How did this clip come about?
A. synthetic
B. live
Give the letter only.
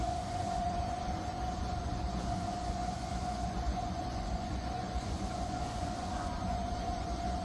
A